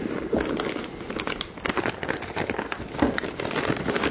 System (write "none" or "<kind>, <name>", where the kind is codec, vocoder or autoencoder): none